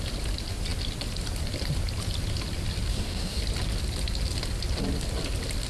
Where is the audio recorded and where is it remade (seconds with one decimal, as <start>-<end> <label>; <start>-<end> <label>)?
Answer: 0.0-2.9 recorded; 2.9-3.4 remade; 3.4-5.7 recorded